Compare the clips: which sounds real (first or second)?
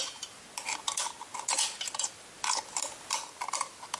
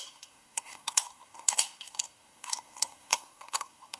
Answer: first